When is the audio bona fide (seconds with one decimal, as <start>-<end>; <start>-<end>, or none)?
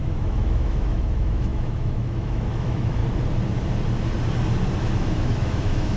3.0-4.8